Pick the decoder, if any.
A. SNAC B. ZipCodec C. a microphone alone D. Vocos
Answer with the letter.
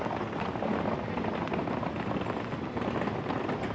C